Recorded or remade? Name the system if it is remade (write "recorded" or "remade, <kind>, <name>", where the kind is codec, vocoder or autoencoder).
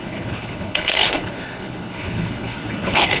remade, codec, HILCodec